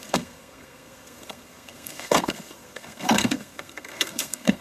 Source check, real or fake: fake